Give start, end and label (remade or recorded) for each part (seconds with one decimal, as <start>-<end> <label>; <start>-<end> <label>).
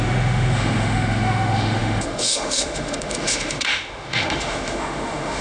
0.0-5.4 remade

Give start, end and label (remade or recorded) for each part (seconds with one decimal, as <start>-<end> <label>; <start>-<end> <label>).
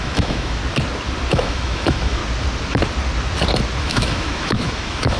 0.0-0.6 remade; 0.6-1.3 recorded; 1.3-2.2 remade; 2.2-3.8 recorded; 3.8-5.2 remade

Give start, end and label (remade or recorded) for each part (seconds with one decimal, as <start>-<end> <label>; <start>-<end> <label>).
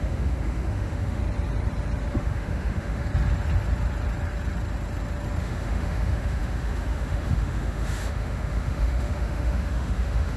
0.0-1.2 remade; 1.2-2.1 recorded; 2.1-3.1 remade; 3.1-5.4 recorded; 5.4-10.4 remade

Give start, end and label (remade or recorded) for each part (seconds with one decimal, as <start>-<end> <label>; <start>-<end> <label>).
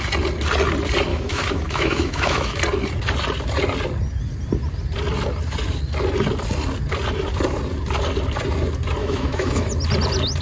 0.0-1.1 recorded; 1.1-2.6 remade; 2.6-9.0 recorded; 9.0-9.7 remade; 9.7-10.4 recorded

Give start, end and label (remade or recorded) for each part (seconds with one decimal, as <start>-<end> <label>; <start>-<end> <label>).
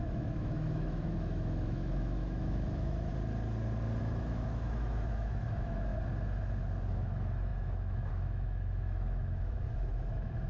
0.0-3.1 remade; 3.1-4.0 recorded; 4.0-5.9 remade; 5.9-6.9 recorded; 6.9-10.5 remade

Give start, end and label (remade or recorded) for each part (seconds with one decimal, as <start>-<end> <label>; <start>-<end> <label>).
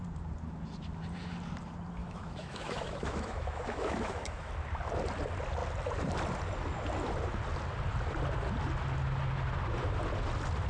0.0-2.0 recorded; 2.0-4.5 remade; 4.5-10.7 recorded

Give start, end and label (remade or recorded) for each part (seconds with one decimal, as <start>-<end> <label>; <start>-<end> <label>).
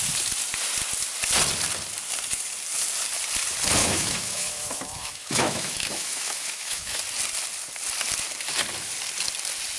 0.0-3.8 recorded; 3.8-7.0 remade; 7.0-9.8 recorded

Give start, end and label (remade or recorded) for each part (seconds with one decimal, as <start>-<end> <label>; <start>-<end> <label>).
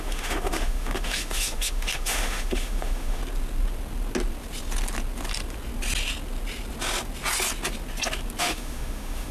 0.0-3.2 remade; 3.2-8.4 recorded; 8.4-9.3 remade